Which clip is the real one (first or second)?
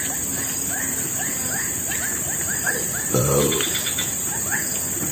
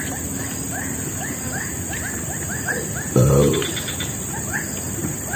second